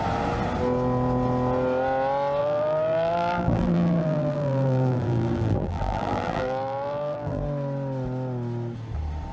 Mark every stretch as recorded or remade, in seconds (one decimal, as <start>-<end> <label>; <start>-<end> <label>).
0.0-2.4 recorded; 2.4-7.4 remade; 7.4-9.3 recorded